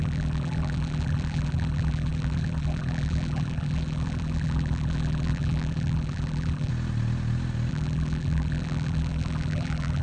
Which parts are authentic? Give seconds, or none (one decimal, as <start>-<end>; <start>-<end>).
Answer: 6.7-7.7